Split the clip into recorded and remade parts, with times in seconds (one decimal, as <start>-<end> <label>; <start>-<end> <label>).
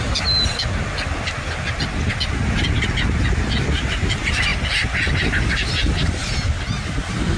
0.0-7.4 recorded